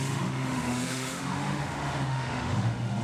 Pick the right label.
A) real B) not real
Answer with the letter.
B